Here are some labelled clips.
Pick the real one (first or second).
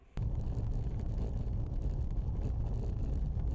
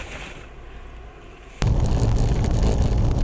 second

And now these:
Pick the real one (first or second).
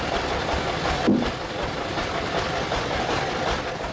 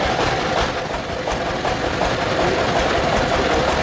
second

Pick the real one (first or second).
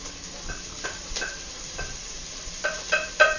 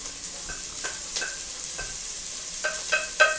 second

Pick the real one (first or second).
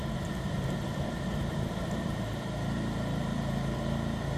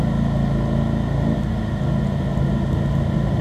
second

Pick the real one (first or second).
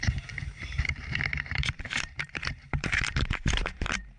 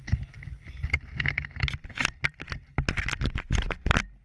second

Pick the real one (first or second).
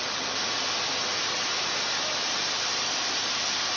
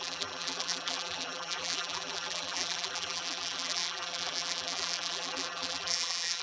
first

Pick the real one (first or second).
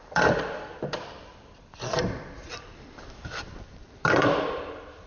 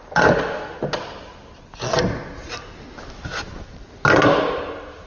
second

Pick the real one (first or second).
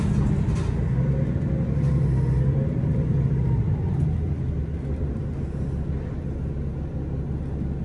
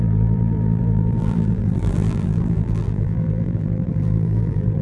first